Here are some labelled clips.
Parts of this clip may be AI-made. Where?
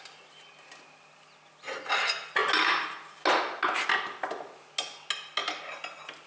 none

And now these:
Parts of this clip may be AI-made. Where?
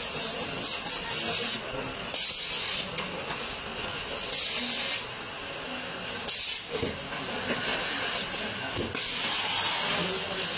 none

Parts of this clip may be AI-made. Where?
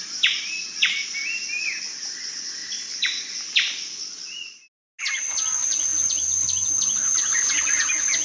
none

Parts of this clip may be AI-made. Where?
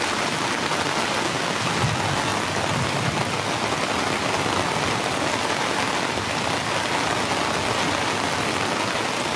none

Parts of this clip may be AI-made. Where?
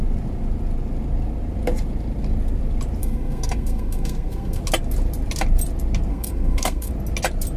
3.0-4.6 (codec, SNAC); 6.1-6.9